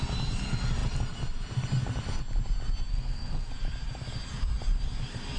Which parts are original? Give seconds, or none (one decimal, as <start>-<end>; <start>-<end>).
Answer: 0.0-2.9; 3.5-5.4